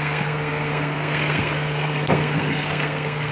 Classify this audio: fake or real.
fake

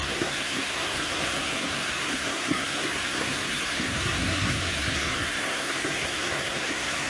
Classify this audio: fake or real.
fake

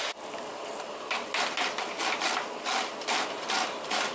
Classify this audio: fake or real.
real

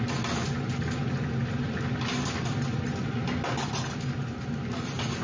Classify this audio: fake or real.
real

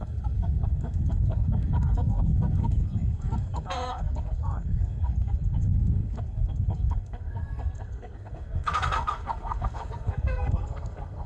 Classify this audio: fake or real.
fake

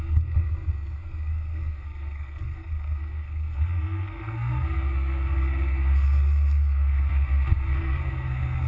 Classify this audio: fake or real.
fake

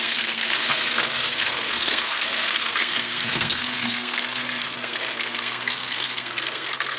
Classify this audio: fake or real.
fake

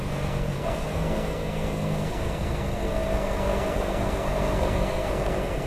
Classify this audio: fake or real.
fake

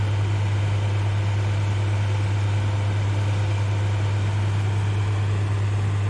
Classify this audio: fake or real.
real